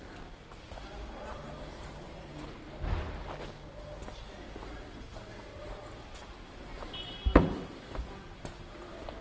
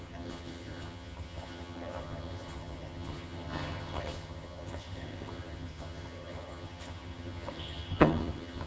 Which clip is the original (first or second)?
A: first